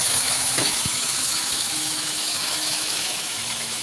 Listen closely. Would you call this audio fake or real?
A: fake